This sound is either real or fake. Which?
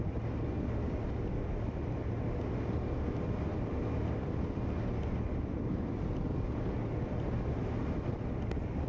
real